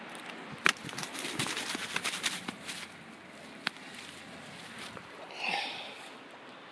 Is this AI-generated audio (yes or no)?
no